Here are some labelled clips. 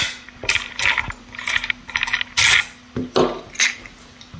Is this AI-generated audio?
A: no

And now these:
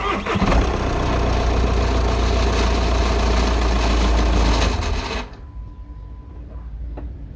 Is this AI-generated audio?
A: no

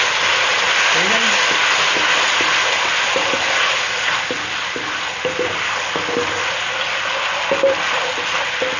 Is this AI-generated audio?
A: no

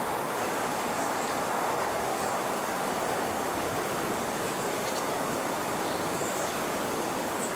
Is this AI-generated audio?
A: yes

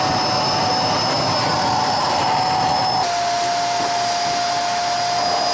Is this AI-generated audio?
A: no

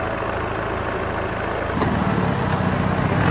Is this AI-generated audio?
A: no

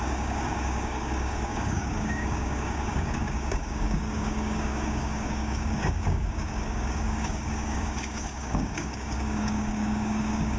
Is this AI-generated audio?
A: yes